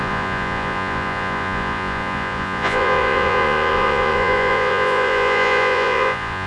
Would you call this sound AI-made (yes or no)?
yes